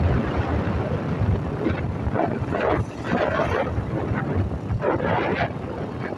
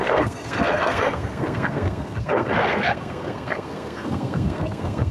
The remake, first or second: second